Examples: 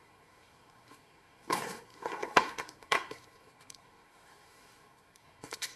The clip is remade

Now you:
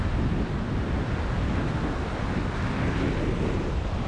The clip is recorded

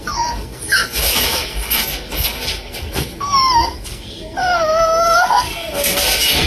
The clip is remade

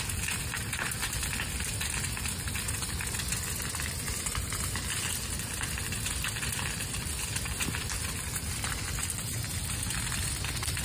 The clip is recorded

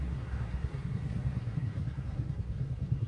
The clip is remade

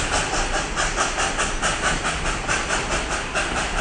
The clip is recorded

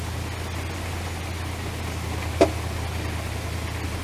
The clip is recorded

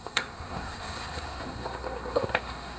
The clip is remade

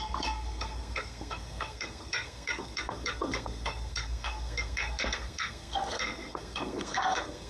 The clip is remade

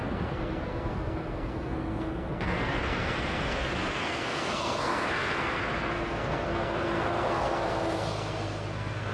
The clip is remade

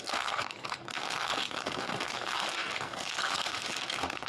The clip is remade